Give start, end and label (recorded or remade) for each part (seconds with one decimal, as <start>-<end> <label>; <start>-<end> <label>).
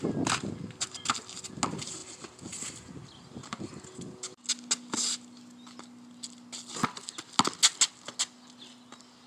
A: 0.0-2.0 recorded; 2.0-3.6 remade; 3.6-9.3 recorded